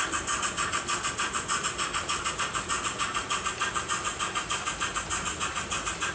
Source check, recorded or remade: recorded